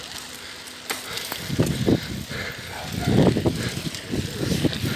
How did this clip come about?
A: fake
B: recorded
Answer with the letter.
B